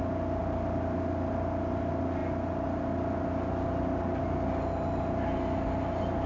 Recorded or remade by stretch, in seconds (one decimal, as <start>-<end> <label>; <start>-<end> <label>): 0.0-6.3 recorded